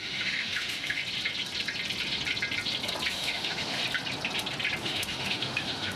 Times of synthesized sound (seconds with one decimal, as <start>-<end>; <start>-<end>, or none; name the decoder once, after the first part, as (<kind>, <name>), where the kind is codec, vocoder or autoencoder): 0.0-1.0 (autoencoder, DAC-VAE); 3.1-3.8; 4.8-6.0